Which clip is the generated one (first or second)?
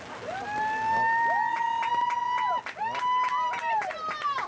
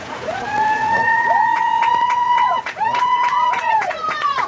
second